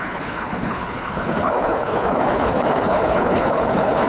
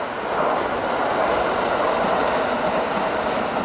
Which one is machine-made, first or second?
first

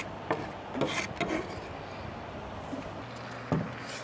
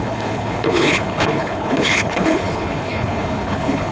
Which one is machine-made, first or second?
second